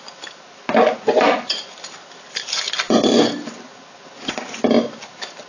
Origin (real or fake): real